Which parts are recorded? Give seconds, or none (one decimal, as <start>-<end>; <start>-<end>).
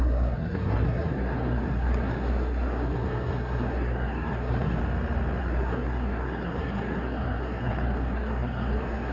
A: 4.8-5.4